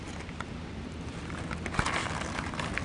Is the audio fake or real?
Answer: real